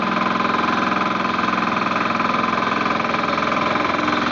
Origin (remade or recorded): recorded